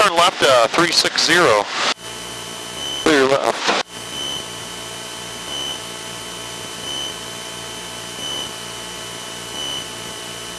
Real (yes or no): yes